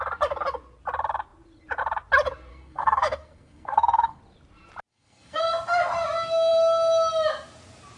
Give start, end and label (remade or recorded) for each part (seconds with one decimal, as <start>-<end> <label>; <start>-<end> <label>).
0.0-2.5 recorded; 2.5-4.2 remade; 4.2-4.9 recorded; 4.9-5.4 remade; 5.4-8.0 recorded